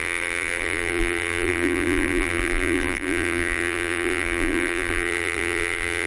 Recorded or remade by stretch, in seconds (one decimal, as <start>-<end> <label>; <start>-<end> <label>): 0.0-6.1 remade